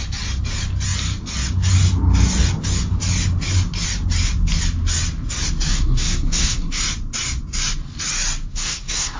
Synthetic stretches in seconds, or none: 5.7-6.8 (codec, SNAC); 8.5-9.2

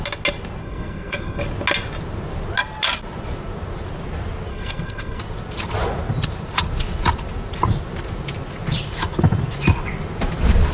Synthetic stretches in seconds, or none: 0.6-1.4 (codec, SNAC); 4.5-5.2

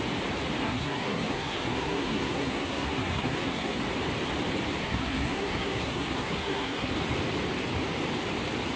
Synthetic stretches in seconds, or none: 0.6-3.8 (codec, SNAC); 4.8-6.9

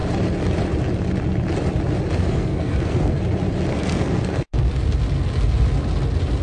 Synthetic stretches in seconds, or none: 2.2-3.2 (codec, SNAC); 3.7-4.7

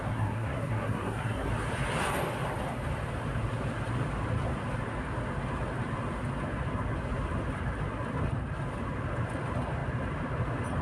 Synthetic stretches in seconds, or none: 0.0-1.5 (codec, SNAC)